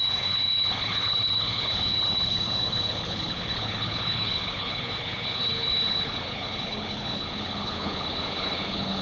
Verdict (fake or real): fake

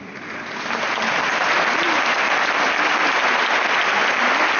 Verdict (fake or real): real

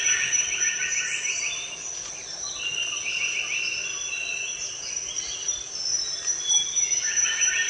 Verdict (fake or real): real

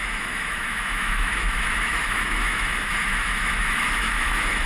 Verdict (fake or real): fake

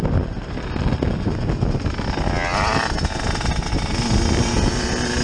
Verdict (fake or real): real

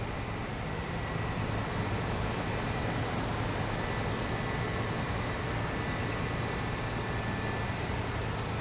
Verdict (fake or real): real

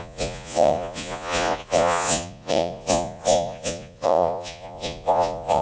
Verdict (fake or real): fake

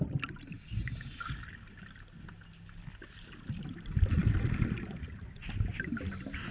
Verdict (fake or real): real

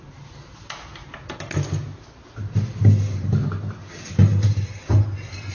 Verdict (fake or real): real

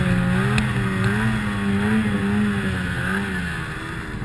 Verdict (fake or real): real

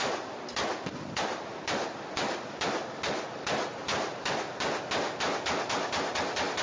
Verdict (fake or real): real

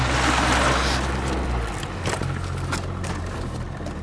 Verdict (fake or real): real